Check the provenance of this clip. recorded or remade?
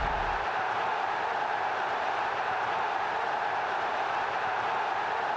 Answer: remade